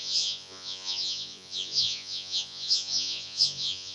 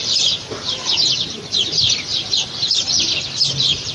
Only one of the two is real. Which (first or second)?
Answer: second